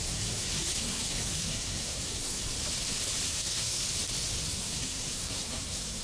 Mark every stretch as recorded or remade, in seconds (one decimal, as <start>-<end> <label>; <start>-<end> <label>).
0.0-2.4 remade; 2.4-3.3 recorded; 3.3-3.8 remade; 3.8-4.4 recorded; 4.4-6.0 remade